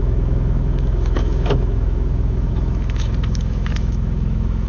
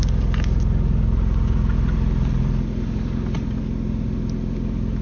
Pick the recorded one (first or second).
second